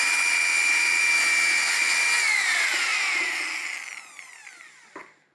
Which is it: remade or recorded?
recorded